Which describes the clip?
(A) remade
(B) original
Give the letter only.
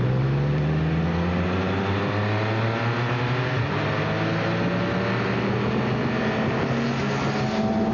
B